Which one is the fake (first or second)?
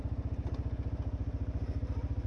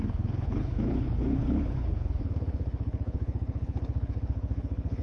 second